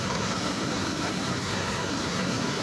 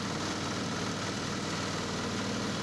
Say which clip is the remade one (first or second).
first